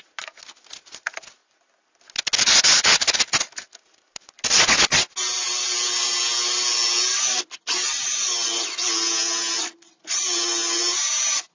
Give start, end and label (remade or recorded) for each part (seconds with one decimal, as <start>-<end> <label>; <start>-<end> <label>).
0.0-11.5 recorded